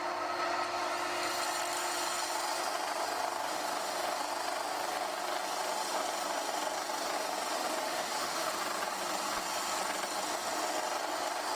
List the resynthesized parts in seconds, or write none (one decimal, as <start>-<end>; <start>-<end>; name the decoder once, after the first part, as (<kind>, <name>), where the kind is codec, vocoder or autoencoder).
7.8-8.5 (autoencoder, DAC-VAE)